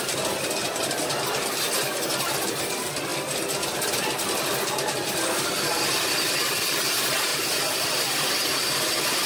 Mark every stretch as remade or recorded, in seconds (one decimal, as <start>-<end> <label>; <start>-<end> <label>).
0.0-7.3 recorded; 7.3-8.3 remade; 8.3-9.3 recorded

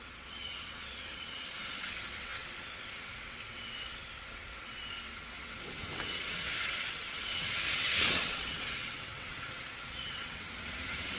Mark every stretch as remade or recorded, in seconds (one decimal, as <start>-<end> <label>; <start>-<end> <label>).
0.0-11.2 remade